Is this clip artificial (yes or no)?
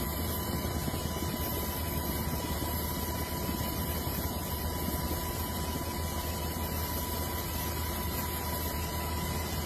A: no